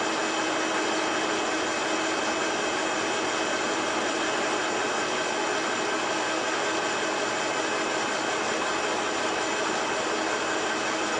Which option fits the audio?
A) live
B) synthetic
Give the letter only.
A